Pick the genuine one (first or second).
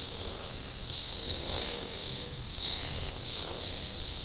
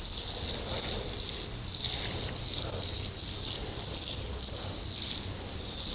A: second